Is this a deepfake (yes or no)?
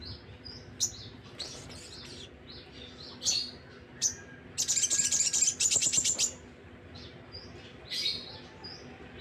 no